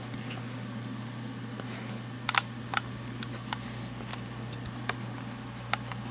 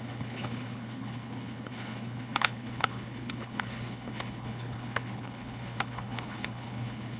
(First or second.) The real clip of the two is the first